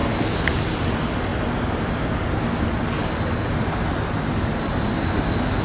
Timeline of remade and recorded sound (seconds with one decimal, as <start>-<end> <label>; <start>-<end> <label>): 0.0-5.6 recorded